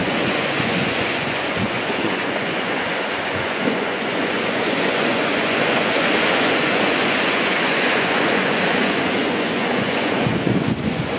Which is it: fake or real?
fake